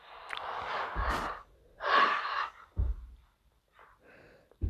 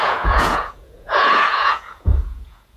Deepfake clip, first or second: second